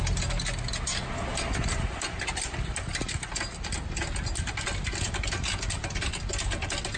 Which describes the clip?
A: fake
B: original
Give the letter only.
B